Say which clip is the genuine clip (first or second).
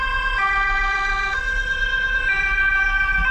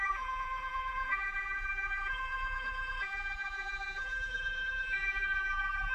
first